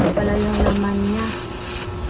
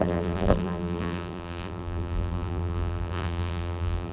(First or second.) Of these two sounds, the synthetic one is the second